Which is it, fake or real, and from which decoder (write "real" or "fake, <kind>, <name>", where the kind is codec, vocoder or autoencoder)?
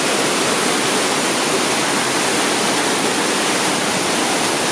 real